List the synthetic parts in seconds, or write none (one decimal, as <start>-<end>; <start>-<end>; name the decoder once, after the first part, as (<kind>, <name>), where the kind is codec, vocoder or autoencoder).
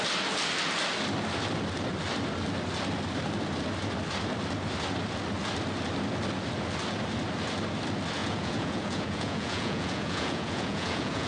8.2-11.3 (vocoder, Vocos)